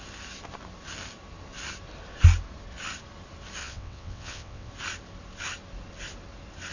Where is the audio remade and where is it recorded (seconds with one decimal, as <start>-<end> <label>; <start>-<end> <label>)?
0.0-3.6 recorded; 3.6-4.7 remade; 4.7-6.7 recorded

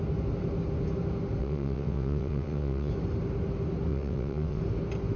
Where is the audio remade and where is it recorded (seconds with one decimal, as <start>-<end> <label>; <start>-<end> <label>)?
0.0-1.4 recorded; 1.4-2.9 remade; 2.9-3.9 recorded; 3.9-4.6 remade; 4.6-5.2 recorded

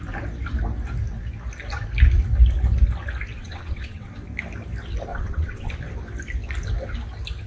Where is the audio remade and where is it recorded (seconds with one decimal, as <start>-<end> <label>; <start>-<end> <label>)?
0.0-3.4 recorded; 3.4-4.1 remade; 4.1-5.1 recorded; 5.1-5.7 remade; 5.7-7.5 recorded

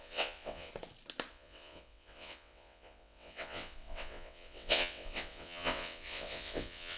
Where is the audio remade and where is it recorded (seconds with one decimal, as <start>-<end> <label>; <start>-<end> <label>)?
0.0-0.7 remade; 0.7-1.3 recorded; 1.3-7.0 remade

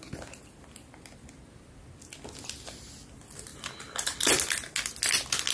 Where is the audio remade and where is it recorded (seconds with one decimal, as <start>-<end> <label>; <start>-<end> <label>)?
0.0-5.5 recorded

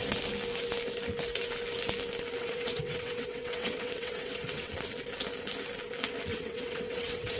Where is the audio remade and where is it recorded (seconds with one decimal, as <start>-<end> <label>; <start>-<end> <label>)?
0.0-2.4 recorded; 2.4-4.7 remade; 4.7-6.3 recorded; 6.3-7.4 remade

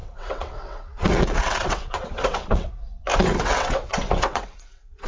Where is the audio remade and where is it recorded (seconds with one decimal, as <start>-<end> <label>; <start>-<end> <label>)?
0.0-2.7 remade; 2.7-3.1 recorded; 3.1-5.1 remade